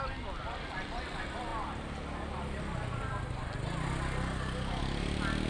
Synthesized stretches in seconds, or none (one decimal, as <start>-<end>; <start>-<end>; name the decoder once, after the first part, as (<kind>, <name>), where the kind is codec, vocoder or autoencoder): none